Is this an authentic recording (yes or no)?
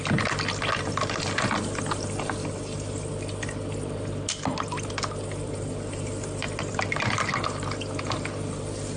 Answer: yes